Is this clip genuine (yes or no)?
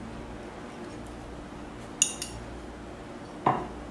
yes